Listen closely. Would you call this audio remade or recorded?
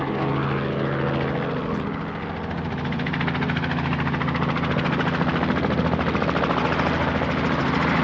recorded